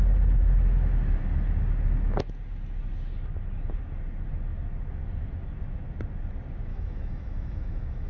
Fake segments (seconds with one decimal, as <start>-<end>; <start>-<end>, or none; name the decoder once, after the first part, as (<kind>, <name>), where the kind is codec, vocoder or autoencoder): 6.7-8.1 (autoencoder, DAC-VAE)